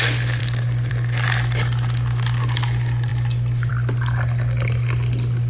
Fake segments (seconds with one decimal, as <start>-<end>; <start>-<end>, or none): 0.4-0.9